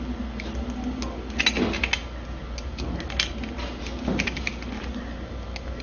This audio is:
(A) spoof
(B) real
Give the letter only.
B